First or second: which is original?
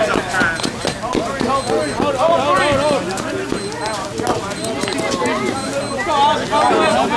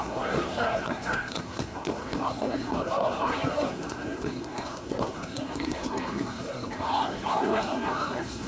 first